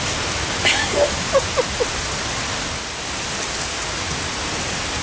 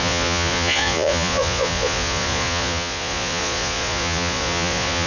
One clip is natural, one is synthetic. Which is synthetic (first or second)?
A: second